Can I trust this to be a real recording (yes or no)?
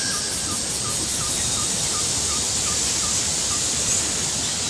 yes